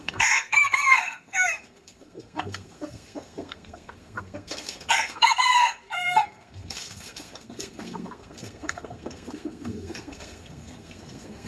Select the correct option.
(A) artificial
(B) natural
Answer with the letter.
A